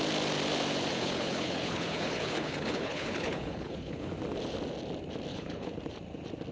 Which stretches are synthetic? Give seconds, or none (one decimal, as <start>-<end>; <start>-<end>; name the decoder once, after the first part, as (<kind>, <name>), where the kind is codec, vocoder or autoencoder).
0.9-4.1 (codec, HILCodec); 5.3-5.8